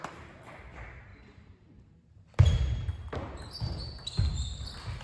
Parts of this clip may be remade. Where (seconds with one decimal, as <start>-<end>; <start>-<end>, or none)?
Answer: 1.1-4.1